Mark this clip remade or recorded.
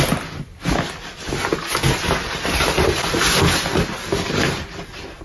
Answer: recorded